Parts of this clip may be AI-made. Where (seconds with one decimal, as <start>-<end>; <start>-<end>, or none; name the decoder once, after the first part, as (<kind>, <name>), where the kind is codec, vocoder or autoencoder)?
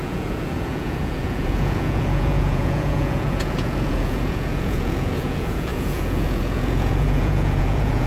0.0-8.1 (vocoder, Vocos)